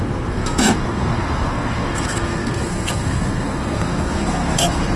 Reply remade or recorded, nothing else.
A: remade